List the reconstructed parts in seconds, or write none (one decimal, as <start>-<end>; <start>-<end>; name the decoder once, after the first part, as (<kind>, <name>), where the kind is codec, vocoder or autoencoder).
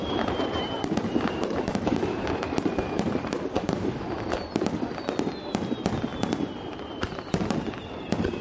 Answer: 0.0-3.9 (vocoder, BigVGAN v2)